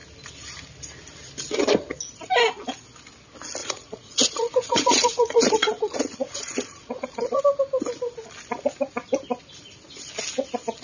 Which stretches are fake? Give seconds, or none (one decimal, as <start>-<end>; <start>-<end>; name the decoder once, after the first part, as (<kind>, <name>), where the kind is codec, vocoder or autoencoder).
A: 3.6-7.4 (vocoder, Vocos)